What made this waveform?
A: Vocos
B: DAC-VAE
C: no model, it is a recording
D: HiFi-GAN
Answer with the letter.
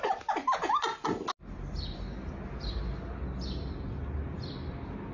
C